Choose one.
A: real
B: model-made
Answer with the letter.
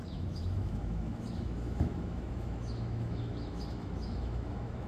B